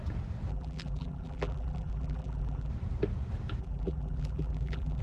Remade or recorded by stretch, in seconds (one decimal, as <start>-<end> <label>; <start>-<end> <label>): 0.0-0.5 recorded; 0.5-2.7 remade; 2.7-3.6 recorded; 3.6-5.0 remade